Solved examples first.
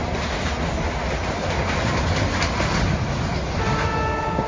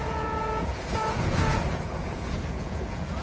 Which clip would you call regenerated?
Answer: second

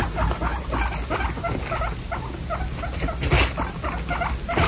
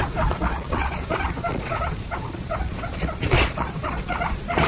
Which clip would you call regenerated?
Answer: second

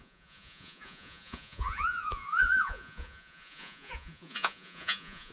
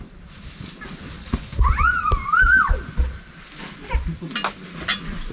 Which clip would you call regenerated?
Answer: first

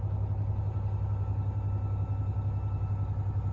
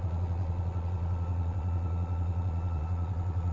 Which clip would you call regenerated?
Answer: second